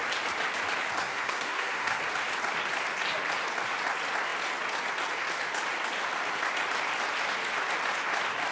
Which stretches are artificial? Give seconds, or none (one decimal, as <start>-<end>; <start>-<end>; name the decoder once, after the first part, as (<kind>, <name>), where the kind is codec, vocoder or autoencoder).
1.0-2.0 (codec, SNAC)